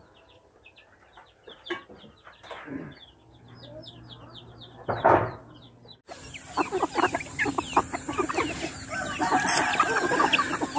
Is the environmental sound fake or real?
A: real